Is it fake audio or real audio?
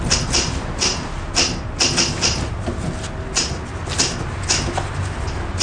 real